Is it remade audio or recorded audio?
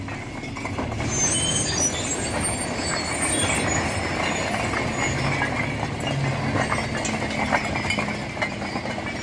recorded